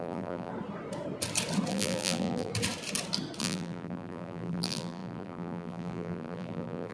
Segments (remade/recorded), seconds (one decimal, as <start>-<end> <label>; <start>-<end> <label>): 0.0-0.5 remade; 0.5-1.7 recorded; 1.7-2.5 remade; 2.5-3.4 recorded; 3.4-6.9 remade